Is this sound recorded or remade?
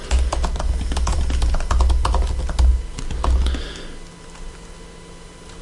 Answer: recorded